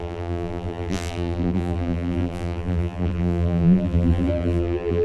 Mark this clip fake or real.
fake